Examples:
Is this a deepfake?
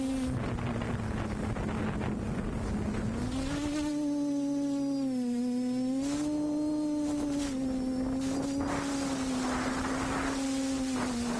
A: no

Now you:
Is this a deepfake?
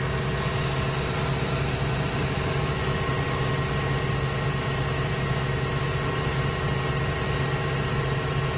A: no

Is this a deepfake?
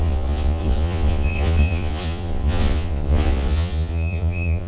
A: yes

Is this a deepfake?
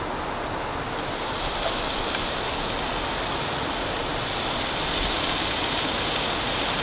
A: no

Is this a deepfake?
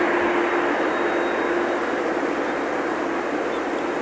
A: no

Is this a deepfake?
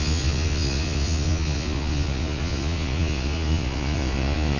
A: yes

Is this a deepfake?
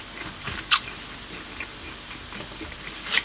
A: no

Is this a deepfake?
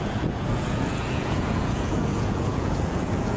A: yes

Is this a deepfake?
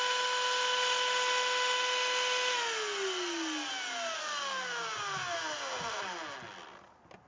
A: no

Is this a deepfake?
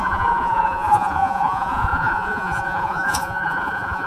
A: yes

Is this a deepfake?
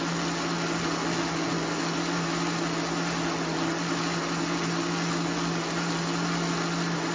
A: no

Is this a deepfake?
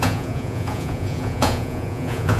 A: yes